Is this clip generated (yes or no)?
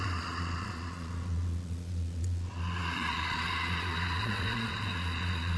yes